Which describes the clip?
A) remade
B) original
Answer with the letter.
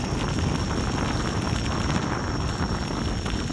B